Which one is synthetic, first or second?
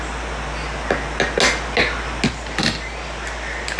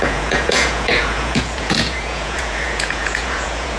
second